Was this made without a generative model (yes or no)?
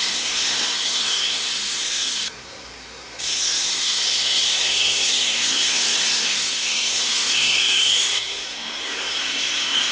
no